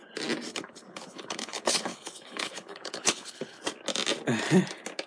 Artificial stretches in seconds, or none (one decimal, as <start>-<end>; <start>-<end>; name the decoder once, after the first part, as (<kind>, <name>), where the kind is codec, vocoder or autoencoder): 0.5-3.6 (codec, HILCodec)